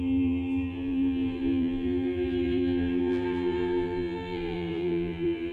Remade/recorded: remade